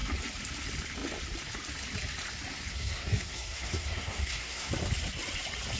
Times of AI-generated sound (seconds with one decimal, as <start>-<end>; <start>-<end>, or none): 2.7-4.7